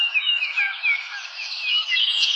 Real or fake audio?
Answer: fake